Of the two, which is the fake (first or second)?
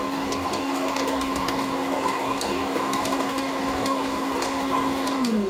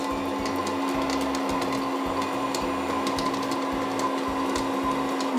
first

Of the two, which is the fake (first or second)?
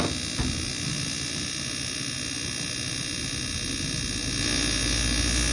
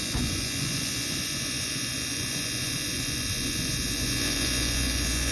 second